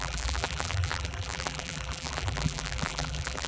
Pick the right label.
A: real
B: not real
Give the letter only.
B